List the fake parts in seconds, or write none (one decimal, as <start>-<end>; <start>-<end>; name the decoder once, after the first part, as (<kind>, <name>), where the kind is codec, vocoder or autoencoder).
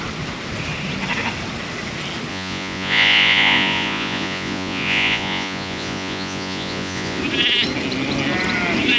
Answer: 2.3-7.2 (vocoder, Vocos)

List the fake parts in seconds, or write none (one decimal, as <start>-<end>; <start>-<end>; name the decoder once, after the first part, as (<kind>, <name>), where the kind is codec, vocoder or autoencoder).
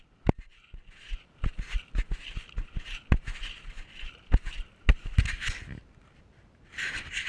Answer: none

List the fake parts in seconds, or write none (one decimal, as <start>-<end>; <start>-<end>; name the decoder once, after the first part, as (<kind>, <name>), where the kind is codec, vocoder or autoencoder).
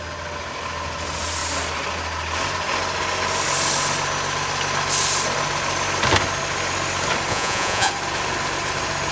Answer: 7.3-7.9 (vocoder, Vocos)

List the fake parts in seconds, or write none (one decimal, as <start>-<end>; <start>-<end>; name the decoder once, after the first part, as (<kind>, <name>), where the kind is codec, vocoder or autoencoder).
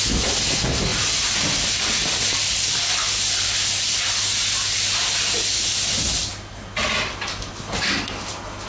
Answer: none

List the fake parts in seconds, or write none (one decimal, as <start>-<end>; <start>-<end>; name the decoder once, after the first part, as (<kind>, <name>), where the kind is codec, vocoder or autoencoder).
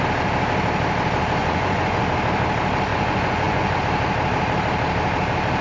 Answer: 1.4-2.0 (vocoder, Vocos); 2.9-3.8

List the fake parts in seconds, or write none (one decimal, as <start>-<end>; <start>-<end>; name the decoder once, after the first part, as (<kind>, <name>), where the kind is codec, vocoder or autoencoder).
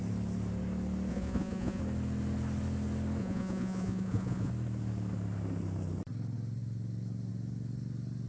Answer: 1.1-1.8 (vocoder, Vocos); 3.2-4.5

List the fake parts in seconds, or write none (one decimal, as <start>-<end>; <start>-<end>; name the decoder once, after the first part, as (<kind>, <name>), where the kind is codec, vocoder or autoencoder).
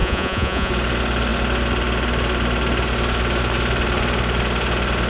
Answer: 0.0-0.7 (vocoder, Vocos)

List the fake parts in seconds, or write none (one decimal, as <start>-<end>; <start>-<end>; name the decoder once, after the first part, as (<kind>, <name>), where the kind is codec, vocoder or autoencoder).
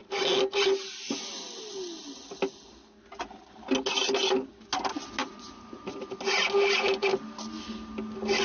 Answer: 5.2-5.8 (vocoder, Vocos)